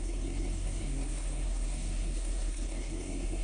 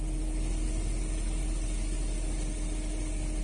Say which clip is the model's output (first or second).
first